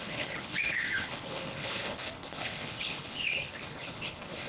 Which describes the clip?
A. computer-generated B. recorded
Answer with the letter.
A